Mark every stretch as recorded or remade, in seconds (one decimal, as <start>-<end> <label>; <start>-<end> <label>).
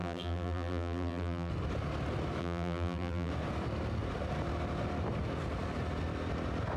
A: 0.0-1.5 remade; 1.5-2.4 recorded; 2.4-3.3 remade; 3.3-6.8 recorded